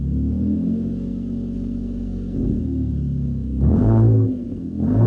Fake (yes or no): yes